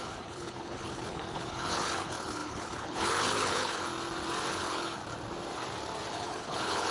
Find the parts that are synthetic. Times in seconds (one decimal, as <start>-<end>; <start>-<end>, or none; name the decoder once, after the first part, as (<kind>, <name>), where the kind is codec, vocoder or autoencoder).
0.0-3.9 (codec, HILCodec); 4.5-5.0; 6.1-6.9